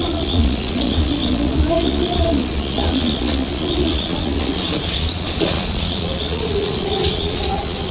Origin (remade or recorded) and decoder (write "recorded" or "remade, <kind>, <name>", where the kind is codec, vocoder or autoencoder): remade, vocoder, Vocos